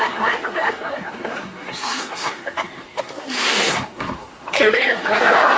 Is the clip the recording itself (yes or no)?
no